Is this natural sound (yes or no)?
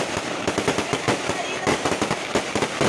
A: yes